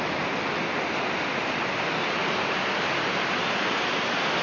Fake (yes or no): no